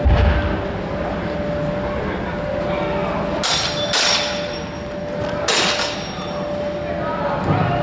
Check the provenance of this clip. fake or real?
real